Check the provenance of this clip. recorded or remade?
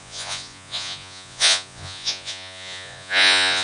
remade